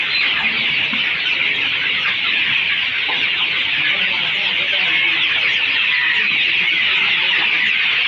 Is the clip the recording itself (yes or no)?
yes